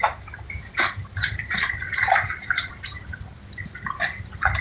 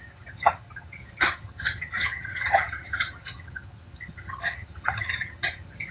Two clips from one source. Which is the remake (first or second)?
second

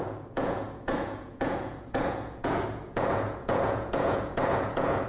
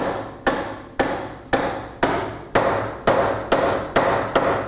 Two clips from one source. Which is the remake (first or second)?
first